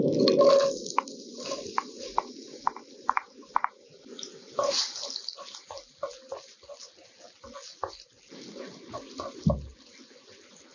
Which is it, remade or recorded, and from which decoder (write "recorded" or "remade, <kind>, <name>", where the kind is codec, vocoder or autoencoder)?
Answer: recorded